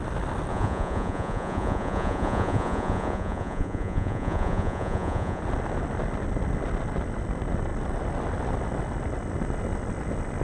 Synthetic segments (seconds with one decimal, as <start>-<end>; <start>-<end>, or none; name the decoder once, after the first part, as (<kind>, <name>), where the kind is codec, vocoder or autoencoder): 0.5-5.4 (vocoder, Vocos)